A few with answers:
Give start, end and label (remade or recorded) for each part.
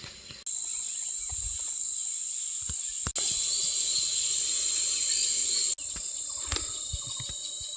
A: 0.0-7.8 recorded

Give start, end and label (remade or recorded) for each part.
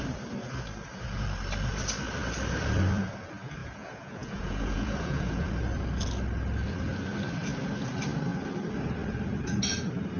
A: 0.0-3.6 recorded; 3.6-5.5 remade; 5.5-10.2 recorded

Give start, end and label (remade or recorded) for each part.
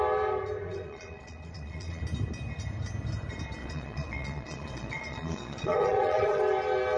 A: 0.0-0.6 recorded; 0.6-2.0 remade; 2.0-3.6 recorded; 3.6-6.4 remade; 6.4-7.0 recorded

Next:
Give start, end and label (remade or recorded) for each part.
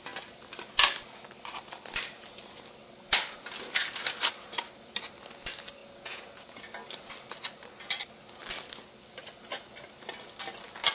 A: 0.0-5.8 recorded; 5.8-6.6 remade; 6.6-10.9 recorded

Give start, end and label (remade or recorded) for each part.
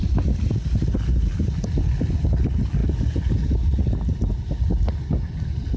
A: 0.0-5.8 recorded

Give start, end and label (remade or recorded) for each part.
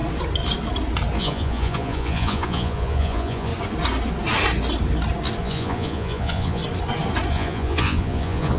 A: 0.0-1.2 recorded; 1.2-3.5 remade; 3.5-5.4 recorded; 5.4-6.6 remade; 6.6-7.3 recorded; 7.3-8.6 remade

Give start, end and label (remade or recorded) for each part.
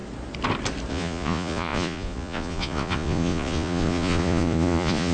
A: 0.0-0.9 recorded; 0.9-5.1 remade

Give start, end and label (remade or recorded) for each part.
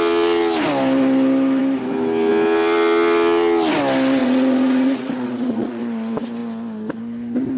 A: 0.0-4.2 recorded; 4.2-5.8 remade; 5.8-7.6 recorded